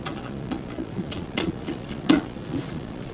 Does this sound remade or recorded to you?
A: remade